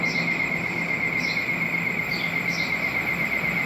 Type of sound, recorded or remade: recorded